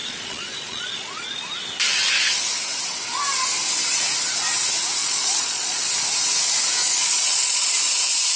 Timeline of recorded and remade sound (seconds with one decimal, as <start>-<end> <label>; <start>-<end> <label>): 0.0-1.4 remade; 1.4-5.0 recorded; 5.0-5.8 remade; 5.8-6.8 recorded; 6.8-7.7 remade; 7.7-8.4 recorded